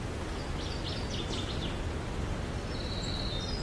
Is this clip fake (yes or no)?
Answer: no